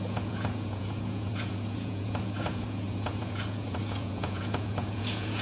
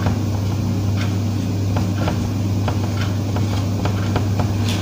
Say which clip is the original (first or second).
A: second